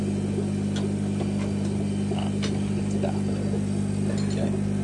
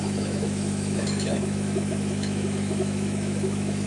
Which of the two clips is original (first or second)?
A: first